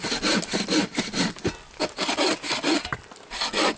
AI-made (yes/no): no